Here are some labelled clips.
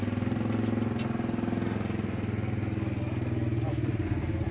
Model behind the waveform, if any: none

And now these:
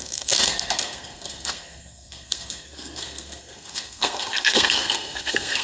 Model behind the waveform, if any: codec, SNAC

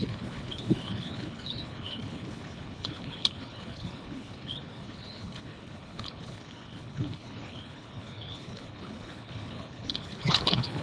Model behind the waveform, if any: codec, HILCodec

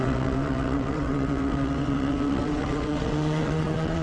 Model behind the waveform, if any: vocoder, WaveNeXt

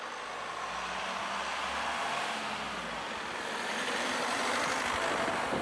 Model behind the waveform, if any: none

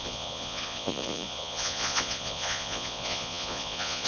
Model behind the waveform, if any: vocoder, Vocos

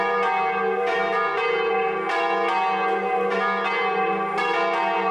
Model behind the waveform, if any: none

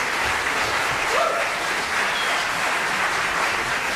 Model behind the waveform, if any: none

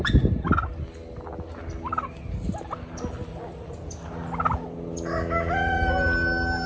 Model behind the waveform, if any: none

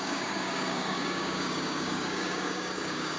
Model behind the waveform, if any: codec, DAC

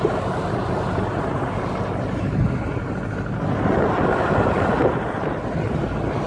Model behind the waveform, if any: none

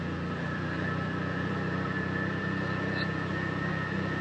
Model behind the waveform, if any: vocoder, BigVGAN v2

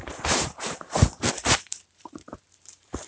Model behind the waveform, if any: vocoder, BigVGAN v2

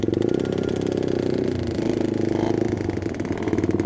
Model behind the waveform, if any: none